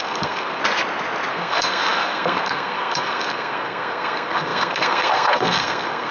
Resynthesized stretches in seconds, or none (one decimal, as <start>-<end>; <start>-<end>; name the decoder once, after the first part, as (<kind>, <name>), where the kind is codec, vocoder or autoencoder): 0.0-0.6 (codec, SNAC); 1.3-6.1